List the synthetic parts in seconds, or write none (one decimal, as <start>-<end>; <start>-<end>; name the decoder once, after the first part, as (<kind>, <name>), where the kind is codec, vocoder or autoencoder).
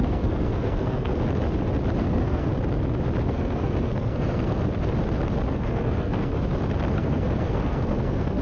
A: 0.0-1.1 (codec, SNAC); 2.0-2.5; 3.2-4.7; 5.5-6.3; 6.9-8.4